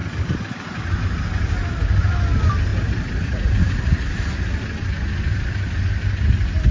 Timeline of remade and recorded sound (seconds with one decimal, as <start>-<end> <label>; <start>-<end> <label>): 0.0-0.9 remade; 0.9-2.7 recorded; 2.7-4.3 remade; 4.3-6.7 recorded